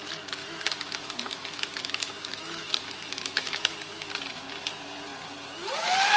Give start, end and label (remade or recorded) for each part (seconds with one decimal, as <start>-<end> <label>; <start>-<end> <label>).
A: 0.0-0.4 recorded; 0.4-4.1 remade; 4.1-6.2 recorded